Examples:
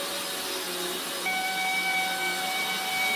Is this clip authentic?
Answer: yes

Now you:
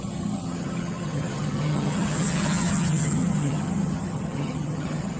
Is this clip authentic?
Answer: no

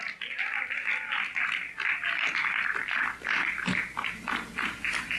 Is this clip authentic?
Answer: yes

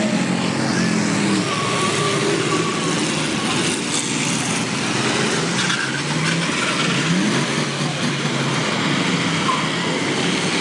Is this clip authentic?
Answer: yes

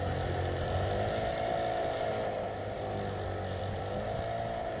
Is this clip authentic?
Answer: yes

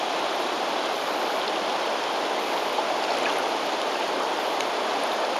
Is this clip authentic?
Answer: yes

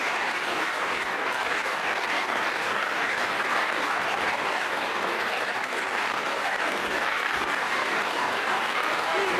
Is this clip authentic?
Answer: no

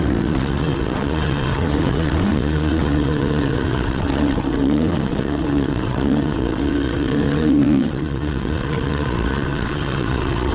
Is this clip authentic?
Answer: no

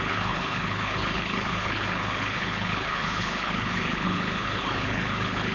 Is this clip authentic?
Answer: no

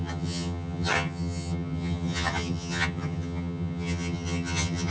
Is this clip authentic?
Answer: no